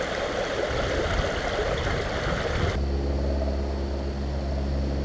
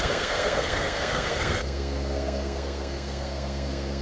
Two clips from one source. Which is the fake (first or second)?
second